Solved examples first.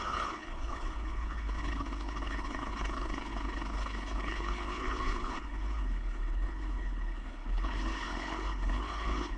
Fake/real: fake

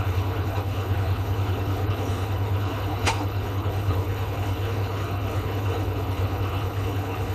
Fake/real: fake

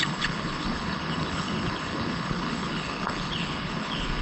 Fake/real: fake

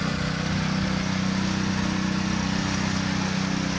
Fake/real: real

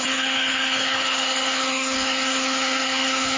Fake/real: fake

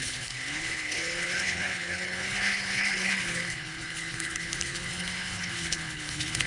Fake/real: fake